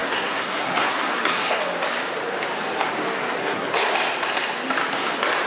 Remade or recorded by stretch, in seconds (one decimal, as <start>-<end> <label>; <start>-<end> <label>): 0.0-1.6 remade; 1.6-3.4 recorded; 3.4-3.9 remade; 3.9-5.5 recorded